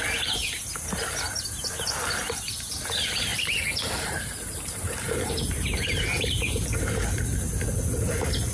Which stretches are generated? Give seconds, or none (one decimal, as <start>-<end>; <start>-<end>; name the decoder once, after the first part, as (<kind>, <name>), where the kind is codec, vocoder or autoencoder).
3.3-6.7 (vocoder, BigVGAN v2)